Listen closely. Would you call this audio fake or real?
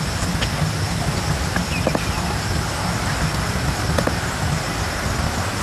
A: real